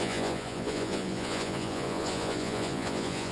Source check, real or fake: fake